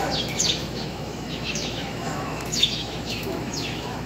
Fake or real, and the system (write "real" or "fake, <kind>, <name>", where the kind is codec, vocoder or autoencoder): fake, autoencoder, DAC-VAE